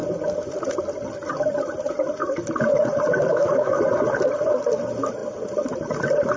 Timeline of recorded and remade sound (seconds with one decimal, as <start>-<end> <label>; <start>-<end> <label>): 0.0-3.3 recorded; 3.3-3.8 remade; 3.8-6.4 recorded